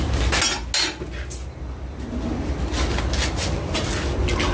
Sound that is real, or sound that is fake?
real